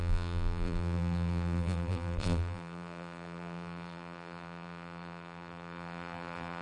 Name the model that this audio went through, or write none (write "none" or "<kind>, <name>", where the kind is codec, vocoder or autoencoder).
vocoder, BigVGAN v2